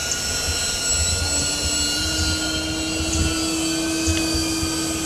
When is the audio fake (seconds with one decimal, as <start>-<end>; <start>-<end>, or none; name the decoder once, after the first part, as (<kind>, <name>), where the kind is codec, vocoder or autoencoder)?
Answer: none